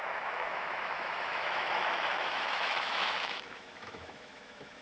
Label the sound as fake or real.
fake